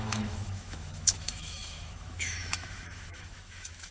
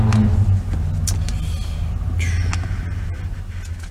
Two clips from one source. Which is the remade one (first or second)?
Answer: first